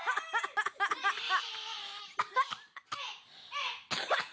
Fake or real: real